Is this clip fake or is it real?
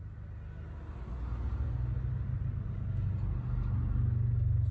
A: real